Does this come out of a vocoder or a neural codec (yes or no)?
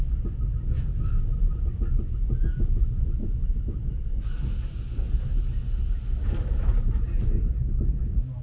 no